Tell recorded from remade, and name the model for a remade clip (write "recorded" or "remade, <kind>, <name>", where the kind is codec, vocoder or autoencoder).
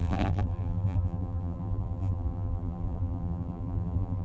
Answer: remade, vocoder, BigVGAN v2